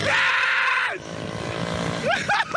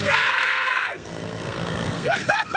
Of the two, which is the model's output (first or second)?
second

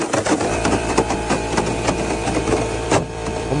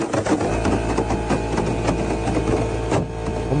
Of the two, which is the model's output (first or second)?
first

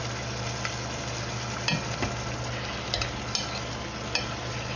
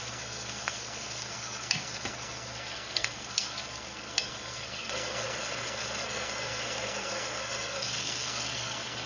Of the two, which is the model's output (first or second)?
second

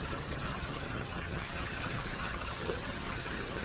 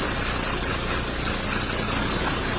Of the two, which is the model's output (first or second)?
first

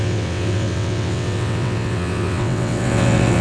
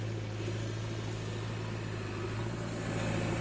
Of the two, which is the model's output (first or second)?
first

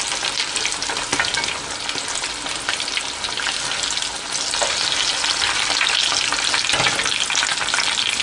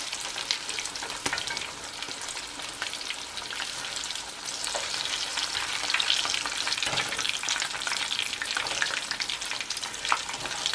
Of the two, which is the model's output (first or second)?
second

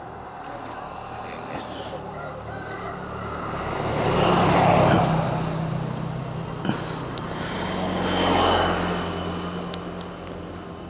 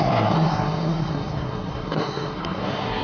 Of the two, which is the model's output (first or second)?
second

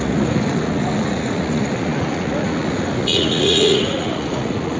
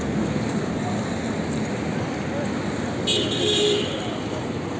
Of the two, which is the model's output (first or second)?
first